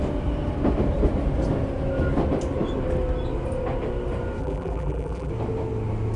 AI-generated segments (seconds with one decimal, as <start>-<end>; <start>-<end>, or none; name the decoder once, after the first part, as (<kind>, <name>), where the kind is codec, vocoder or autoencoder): 4.4-5.3 (vocoder, BigVGAN v2)